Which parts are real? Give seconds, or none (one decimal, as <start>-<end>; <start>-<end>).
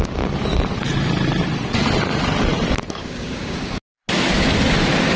0.0-3.0; 3.8-5.2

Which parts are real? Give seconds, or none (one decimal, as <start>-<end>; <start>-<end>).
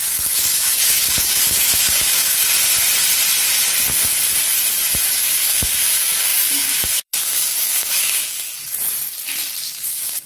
2.5-5.0; 8.5-9.6